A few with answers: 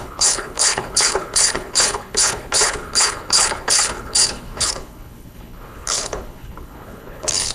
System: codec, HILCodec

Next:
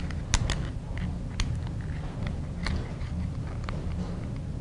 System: none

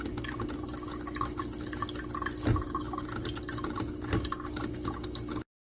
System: none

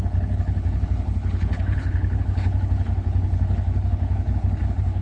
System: codec, HILCodec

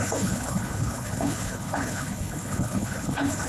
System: codec, HILCodec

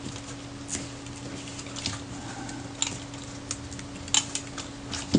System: none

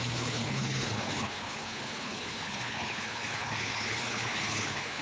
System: codec, HILCodec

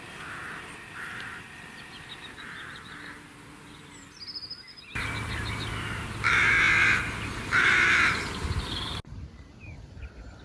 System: none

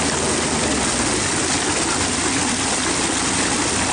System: none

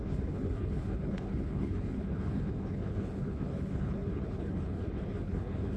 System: codec, HILCodec